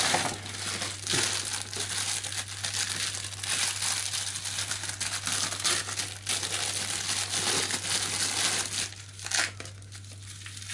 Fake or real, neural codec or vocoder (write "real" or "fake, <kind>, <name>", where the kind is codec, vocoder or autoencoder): real